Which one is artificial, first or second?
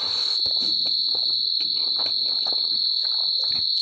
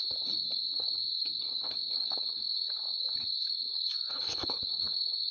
second